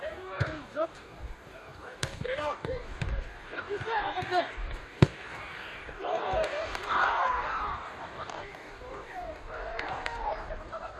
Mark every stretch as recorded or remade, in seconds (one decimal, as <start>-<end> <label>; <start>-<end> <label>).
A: 0.0-11.0 remade